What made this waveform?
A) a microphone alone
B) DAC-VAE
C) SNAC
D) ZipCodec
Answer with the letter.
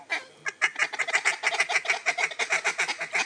A